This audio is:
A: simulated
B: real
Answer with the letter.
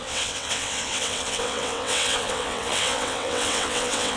A